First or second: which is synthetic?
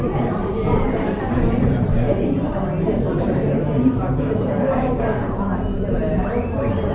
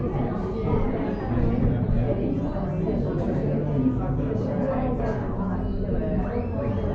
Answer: first